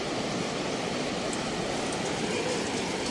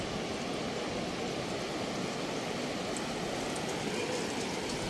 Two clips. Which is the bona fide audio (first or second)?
second